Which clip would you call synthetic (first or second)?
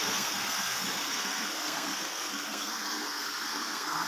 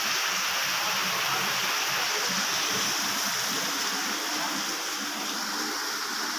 first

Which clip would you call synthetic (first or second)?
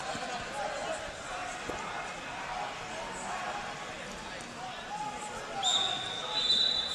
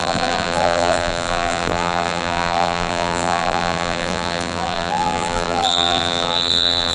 second